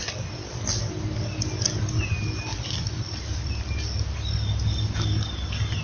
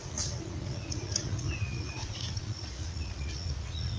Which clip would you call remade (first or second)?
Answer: second